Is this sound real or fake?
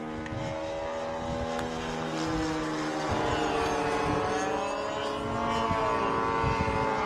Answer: real